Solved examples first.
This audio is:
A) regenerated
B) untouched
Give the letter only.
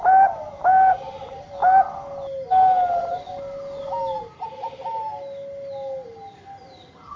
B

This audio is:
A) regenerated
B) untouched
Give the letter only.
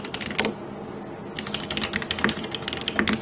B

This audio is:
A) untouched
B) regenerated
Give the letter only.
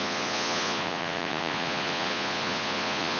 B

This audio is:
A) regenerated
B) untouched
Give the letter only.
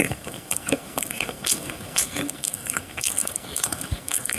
A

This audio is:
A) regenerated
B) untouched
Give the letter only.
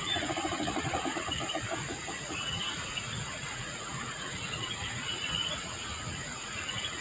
A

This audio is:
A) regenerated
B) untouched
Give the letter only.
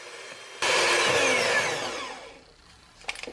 B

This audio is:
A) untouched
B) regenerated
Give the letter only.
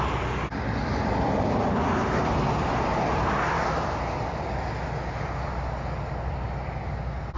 A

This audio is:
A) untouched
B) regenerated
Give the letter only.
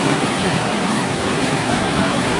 B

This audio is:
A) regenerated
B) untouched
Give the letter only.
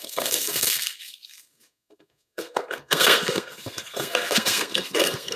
A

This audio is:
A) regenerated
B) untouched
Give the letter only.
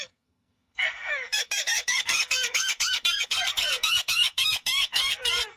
A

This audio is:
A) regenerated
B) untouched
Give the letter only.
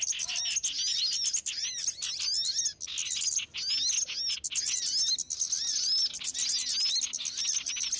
B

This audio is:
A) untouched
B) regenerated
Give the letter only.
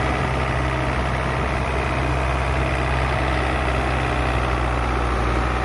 A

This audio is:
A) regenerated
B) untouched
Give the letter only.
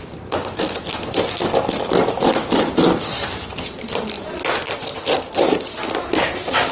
B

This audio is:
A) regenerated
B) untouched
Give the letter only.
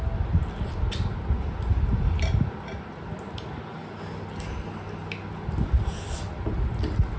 B